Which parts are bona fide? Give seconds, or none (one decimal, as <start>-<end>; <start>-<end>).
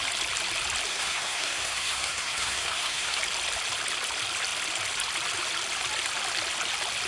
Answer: 0.0-0.9; 3.2-7.1